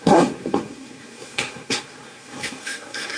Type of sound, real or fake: fake